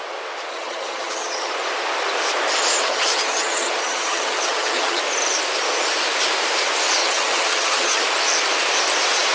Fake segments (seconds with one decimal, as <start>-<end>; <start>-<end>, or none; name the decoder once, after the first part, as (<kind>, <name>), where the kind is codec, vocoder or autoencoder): 0.5-1.5 (vocoder, HiFi-GAN); 2.8-5.0; 7.0-8.0